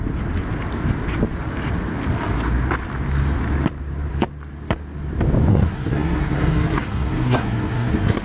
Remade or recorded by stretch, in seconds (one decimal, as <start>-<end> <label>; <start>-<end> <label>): 0.0-5.5 recorded; 5.5-8.2 remade